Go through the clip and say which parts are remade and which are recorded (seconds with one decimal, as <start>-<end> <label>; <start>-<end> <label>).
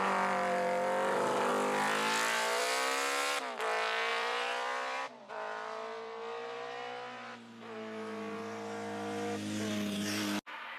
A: 0.0-4.1 recorded; 4.1-5.3 remade; 5.3-10.8 recorded